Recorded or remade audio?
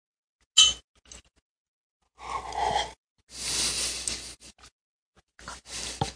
recorded